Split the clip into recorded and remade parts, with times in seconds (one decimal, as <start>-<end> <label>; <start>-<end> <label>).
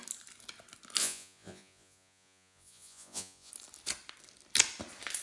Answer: 0.0-1.0 recorded; 1.0-3.5 remade; 3.5-5.2 recorded